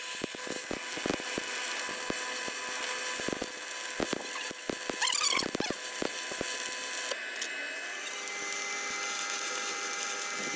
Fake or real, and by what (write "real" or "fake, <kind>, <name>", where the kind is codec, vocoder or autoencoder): real